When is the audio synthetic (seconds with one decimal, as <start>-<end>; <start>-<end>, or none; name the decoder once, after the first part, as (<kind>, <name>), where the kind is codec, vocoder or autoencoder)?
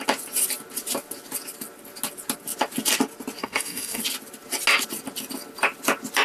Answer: 3.4-4.0 (codec, DAC)